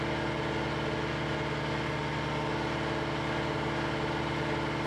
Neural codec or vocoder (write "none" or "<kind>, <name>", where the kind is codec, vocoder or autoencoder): none